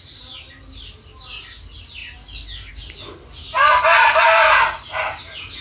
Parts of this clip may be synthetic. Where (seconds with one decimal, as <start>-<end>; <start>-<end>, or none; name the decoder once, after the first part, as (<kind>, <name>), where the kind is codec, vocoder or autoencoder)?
none